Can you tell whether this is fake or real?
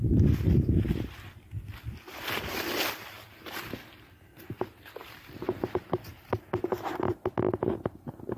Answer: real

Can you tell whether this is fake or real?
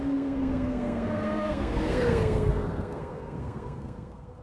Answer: fake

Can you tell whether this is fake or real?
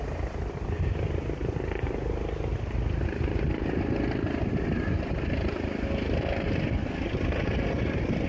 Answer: real